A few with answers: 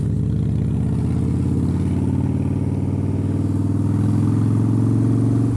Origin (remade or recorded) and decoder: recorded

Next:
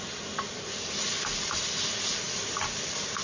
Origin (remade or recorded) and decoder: recorded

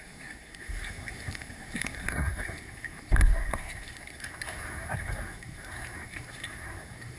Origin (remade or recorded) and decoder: remade, codec, SNAC